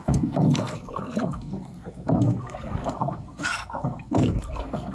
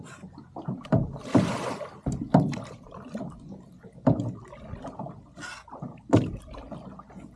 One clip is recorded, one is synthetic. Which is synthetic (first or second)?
first